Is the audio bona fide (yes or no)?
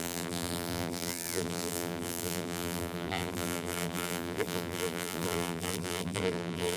no